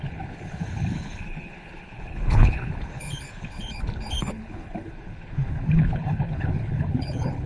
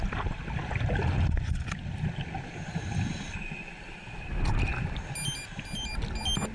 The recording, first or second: second